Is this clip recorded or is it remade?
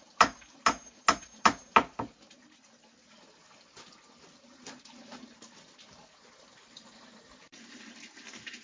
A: recorded